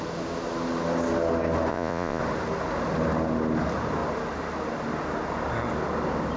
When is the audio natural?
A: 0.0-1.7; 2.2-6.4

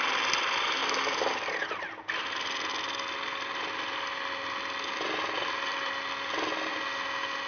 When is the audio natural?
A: 0.0-7.5

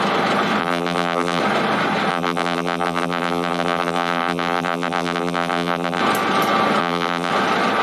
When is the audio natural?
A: 0.0-0.6; 1.4-2.1; 6.0-6.8; 7.3-7.8